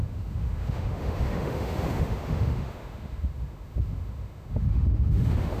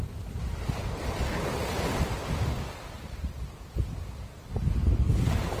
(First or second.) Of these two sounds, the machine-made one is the first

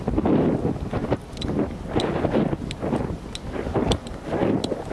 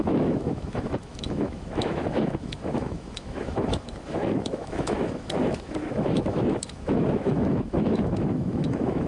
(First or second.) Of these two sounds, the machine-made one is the second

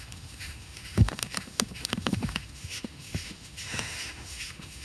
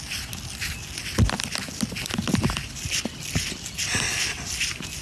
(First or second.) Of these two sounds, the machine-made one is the first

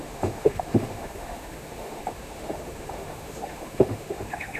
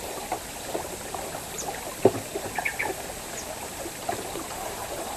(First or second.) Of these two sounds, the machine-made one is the first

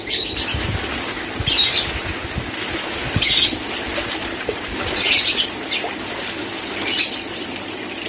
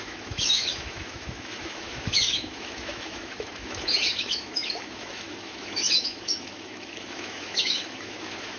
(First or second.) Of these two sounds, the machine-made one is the second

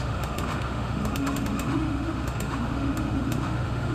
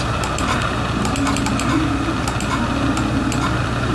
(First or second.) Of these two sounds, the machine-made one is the first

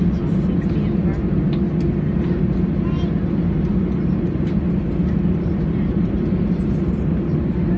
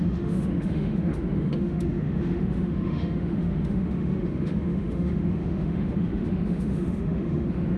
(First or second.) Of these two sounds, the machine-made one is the second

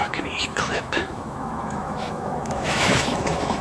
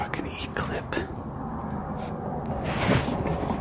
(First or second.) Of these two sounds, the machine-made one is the first